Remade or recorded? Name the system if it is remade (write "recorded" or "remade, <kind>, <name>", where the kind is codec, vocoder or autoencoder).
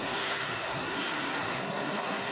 remade, codec, SNAC